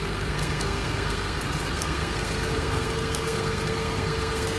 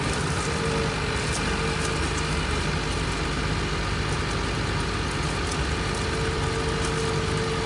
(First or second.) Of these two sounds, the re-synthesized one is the first